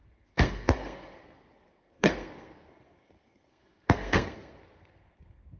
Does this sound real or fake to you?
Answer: fake